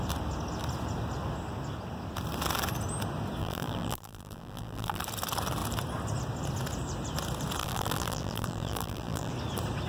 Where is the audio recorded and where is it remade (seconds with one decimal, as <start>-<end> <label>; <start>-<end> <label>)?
0.0-3.4 recorded; 3.4-5.0 remade; 5.0-7.6 recorded; 7.6-9.3 remade; 9.3-9.9 recorded